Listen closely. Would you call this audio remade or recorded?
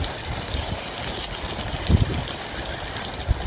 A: recorded